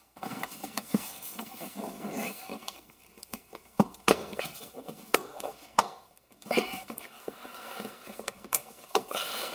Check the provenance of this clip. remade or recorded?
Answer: remade